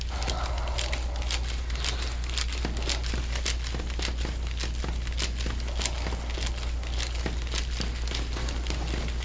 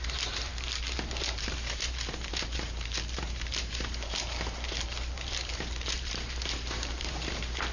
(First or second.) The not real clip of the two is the second